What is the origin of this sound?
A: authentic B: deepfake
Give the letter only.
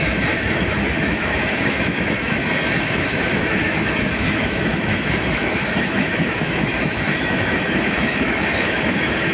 B